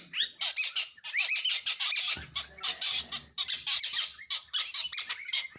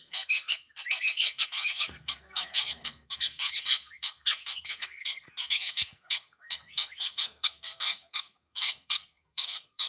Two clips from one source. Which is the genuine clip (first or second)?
first